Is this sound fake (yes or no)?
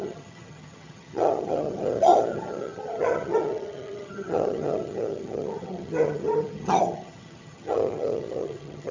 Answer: yes